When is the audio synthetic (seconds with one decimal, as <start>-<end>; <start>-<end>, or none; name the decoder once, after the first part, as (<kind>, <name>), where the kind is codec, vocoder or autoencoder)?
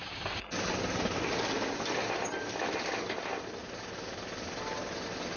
none